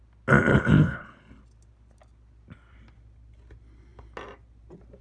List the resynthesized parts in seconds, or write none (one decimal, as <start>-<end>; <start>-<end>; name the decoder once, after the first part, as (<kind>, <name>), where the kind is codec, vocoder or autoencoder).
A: 0.5-1.4 (codec, HILCodec)